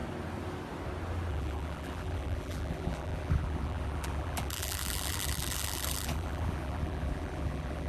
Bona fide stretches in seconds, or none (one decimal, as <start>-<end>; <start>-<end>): 0.0-1.3